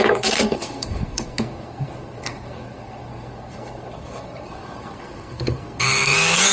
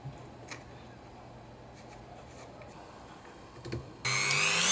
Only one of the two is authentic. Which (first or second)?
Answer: second